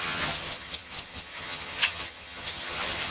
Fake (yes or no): yes